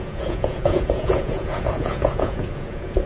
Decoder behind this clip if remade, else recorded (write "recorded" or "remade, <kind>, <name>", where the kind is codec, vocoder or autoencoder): remade, vocoder, Vocos